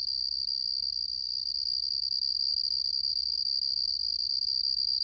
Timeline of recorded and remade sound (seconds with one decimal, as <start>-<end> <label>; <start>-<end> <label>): 0.0-5.0 recorded